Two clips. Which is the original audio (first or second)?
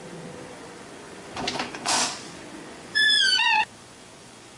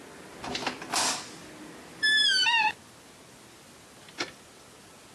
second